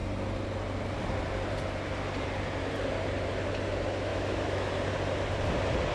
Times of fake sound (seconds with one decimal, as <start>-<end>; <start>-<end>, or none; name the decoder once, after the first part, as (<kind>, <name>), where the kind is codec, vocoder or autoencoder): 4.1-4.7 (autoencoder, DAC-VAE)